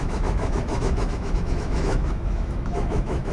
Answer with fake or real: fake